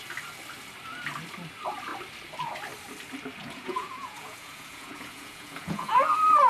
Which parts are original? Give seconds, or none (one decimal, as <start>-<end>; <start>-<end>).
0.0-3.4; 6.1-6.5